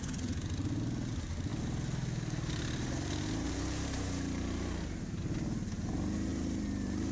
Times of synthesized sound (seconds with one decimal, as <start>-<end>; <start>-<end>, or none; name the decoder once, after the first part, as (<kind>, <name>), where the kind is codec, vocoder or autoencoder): none